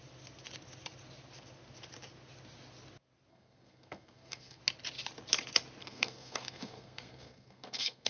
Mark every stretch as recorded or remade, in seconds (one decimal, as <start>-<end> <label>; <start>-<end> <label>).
0.0-3.3 recorded; 3.3-4.6 remade; 4.6-5.8 recorded; 5.8-8.1 remade